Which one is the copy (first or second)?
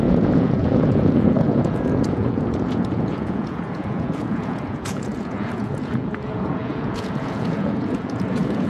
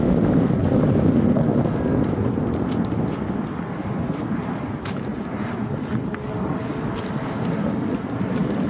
first